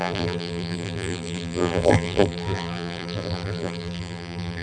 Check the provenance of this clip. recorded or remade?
remade